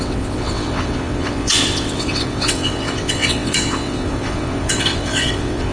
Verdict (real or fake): fake